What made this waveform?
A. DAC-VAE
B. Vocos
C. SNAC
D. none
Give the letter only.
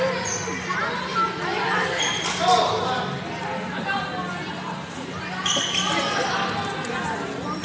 D